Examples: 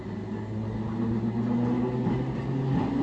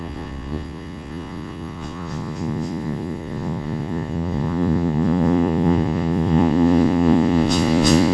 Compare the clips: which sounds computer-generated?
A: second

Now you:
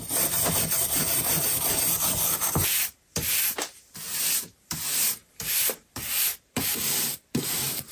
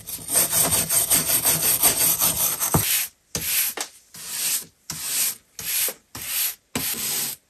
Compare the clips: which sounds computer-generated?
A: first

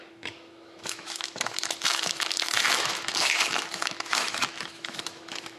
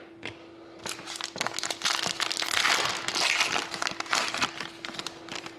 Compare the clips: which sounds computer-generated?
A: first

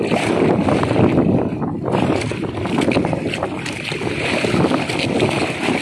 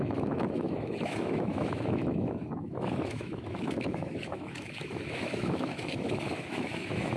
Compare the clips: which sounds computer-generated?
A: second